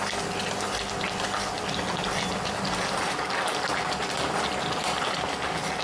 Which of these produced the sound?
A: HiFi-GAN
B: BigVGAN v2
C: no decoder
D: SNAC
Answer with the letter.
C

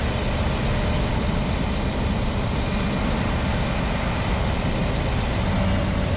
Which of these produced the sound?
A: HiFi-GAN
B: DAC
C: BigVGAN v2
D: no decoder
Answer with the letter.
D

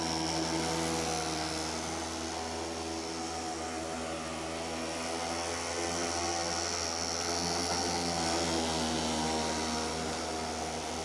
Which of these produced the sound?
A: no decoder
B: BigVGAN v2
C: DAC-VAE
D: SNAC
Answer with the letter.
A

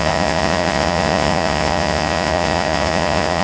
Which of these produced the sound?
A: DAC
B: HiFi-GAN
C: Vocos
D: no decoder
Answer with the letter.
C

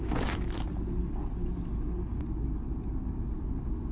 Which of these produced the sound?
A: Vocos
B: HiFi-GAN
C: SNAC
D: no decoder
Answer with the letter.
D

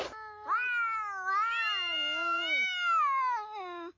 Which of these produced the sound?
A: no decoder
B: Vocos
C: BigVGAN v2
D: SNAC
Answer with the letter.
A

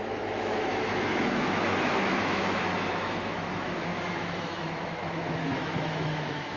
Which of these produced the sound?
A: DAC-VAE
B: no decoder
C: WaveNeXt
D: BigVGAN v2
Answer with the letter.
A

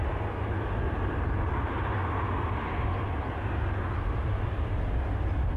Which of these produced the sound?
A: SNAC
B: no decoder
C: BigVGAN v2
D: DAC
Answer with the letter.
B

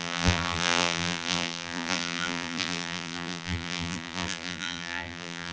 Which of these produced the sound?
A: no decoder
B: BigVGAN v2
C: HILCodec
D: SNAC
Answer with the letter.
B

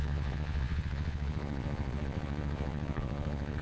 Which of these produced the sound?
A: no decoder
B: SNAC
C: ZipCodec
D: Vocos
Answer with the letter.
D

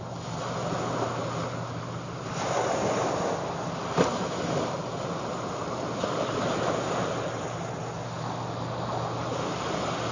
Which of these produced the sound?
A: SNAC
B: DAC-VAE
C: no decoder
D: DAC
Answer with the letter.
C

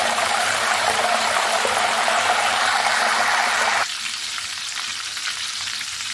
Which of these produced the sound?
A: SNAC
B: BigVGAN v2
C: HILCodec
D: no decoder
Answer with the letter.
B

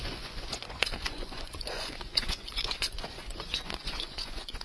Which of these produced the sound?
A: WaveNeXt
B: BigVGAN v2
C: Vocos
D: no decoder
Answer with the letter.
C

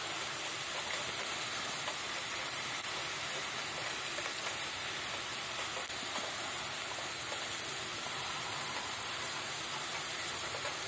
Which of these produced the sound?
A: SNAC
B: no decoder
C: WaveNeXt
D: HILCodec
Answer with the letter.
B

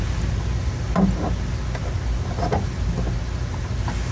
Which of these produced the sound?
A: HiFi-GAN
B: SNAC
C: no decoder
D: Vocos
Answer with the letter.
C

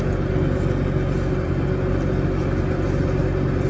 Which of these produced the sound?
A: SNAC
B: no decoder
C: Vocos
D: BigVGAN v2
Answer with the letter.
B